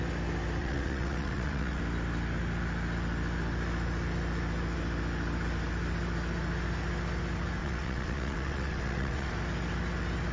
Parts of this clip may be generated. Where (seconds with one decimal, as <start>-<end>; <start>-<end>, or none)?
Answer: 0.6-1.8; 7.6-9.3